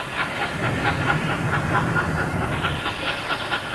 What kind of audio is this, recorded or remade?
recorded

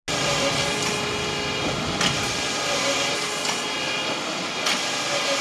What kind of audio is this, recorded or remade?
recorded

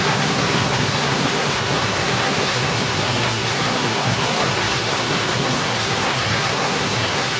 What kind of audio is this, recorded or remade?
remade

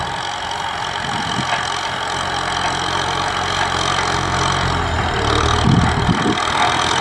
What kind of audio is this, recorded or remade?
recorded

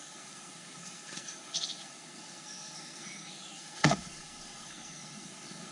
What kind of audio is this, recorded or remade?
remade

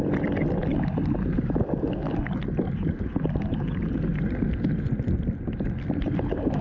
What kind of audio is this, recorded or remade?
recorded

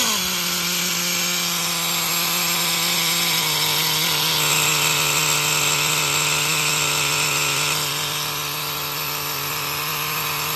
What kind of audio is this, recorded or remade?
recorded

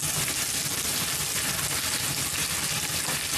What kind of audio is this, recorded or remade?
recorded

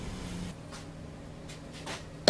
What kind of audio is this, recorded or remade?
recorded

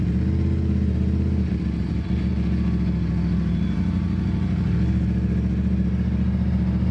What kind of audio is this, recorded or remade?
recorded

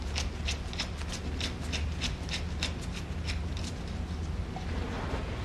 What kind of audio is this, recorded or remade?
recorded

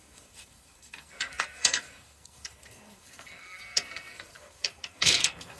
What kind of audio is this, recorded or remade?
remade